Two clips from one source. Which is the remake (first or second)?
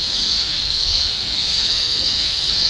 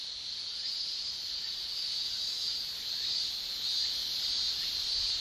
first